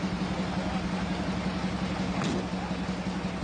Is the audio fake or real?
real